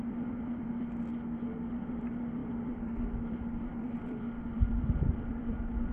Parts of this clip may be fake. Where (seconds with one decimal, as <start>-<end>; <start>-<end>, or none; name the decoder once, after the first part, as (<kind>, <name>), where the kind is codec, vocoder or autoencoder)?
0.0-1.1 (vocoder, BigVGAN v2); 1.7-5.9